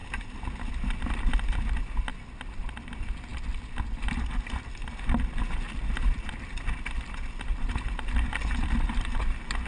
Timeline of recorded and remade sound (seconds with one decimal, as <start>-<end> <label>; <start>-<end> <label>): 0.0-9.7 recorded